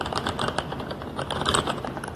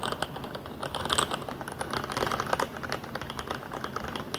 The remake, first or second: first